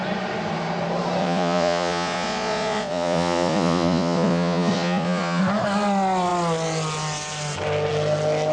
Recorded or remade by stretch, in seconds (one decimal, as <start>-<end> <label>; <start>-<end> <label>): 0.0-1.2 recorded; 1.2-5.4 remade; 5.4-8.5 recorded